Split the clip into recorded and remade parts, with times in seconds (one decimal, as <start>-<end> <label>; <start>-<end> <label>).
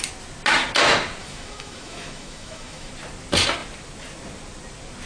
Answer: 0.0-1.2 recorded; 1.2-2.9 remade; 2.9-5.1 recorded